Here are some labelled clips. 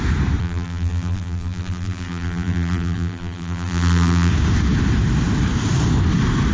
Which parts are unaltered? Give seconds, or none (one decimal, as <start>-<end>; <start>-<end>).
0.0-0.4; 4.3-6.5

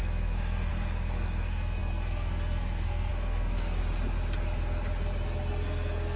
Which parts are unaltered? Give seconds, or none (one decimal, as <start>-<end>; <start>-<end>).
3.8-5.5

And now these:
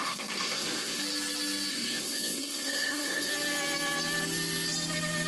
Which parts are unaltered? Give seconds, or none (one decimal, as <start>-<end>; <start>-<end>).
1.0-1.7; 3.3-5.3